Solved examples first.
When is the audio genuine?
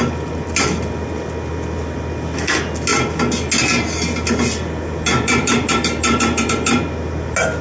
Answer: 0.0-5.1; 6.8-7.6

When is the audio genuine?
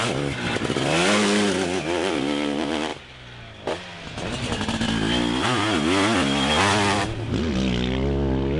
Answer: 0.0-8.6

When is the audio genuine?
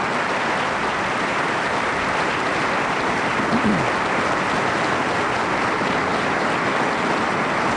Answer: 0.0-7.8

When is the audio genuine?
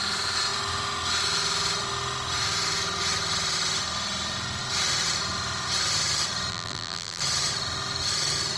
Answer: 0.0-6.5; 7.2-8.6